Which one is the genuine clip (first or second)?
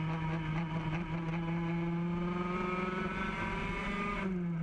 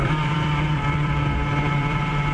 first